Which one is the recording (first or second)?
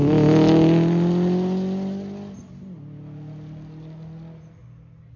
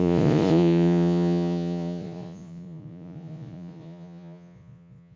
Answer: first